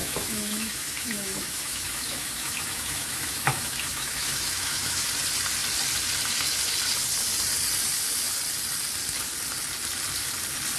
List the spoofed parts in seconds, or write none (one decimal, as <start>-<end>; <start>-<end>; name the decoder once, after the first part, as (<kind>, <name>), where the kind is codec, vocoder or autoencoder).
0.0-5.1 (autoencoder, DAC-VAE)